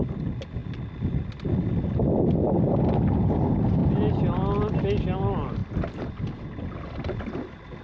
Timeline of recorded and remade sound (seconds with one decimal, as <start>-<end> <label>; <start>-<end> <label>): 0.0-5.6 recorded; 5.6-6.3 remade; 6.3-7.8 recorded